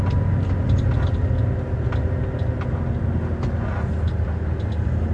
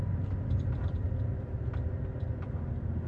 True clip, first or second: first